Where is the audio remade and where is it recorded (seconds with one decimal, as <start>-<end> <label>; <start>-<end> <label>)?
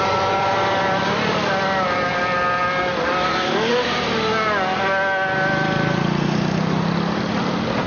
0.0-0.4 remade; 0.4-3.3 recorded; 3.3-3.7 remade; 3.7-7.9 recorded